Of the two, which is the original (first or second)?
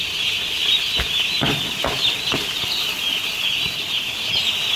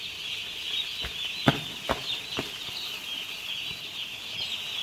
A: second